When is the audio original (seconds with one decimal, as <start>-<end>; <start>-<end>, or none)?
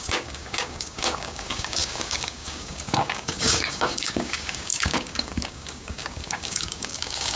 none